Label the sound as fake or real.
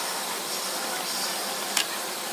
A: fake